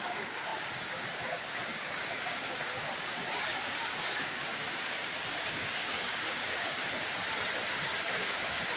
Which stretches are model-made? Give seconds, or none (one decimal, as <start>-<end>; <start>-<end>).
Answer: 0.0-6.8; 8.0-8.8